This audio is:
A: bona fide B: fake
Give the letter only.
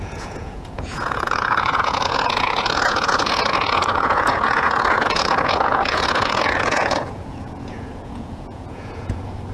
B